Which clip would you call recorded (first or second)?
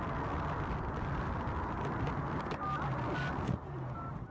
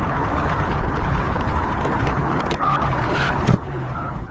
first